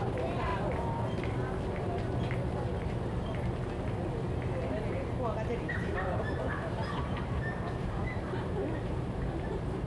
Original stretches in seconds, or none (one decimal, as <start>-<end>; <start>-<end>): 0.5-5.7